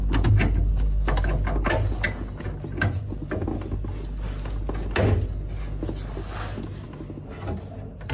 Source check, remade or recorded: recorded